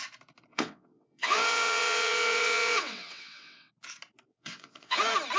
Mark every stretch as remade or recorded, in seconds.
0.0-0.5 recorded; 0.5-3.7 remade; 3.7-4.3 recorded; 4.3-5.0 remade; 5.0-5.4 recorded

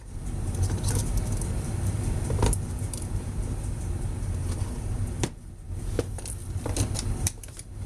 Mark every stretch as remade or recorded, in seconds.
0.0-6.4 recorded; 6.4-7.9 remade

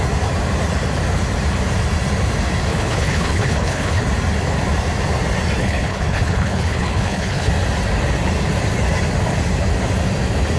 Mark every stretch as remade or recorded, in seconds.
0.0-2.7 recorded; 2.7-4.0 remade; 4.0-5.6 recorded; 5.6-7.5 remade; 7.5-10.6 recorded

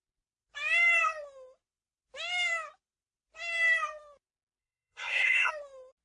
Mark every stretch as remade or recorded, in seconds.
0.0-4.6 recorded; 4.6-5.5 remade; 5.5-6.0 recorded

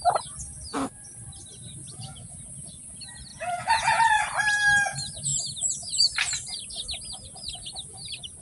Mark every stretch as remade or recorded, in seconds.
0.0-1.8 recorded; 1.8-2.4 remade; 2.4-3.3 recorded; 3.3-4.0 remade; 4.0-8.4 recorded